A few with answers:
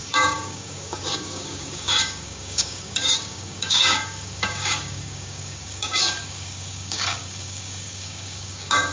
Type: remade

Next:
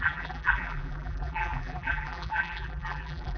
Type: remade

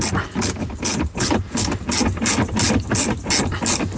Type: recorded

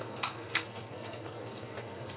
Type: remade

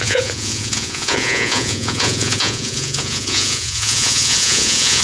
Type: remade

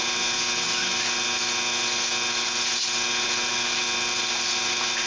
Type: recorded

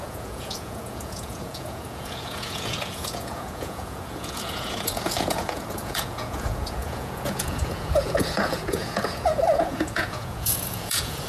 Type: remade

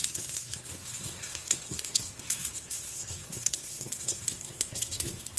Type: remade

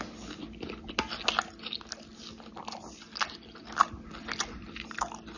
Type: recorded